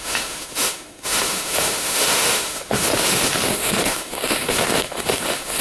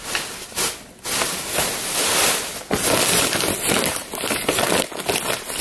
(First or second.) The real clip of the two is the second